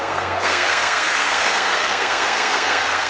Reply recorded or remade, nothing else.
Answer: remade